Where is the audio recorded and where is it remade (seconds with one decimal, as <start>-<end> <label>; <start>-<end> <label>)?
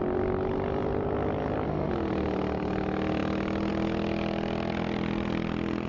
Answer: 0.0-5.9 recorded